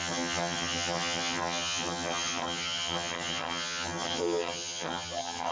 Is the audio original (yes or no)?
no